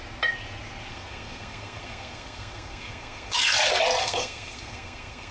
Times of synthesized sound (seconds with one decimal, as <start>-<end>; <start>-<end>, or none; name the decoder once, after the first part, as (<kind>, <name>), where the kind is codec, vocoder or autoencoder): 0.9-3.5 (codec, SNAC); 4.0-5.3